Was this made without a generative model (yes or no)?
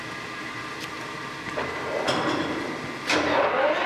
yes